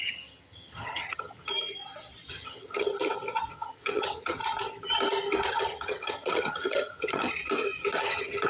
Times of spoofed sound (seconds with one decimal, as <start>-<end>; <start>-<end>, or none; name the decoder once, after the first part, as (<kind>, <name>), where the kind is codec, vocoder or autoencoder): 0.0-1.5 (vocoder, HiFi-GAN); 2.3-2.9; 3.5-4.4; 5.5-7.4; 8.0-8.5